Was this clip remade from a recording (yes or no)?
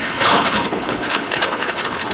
yes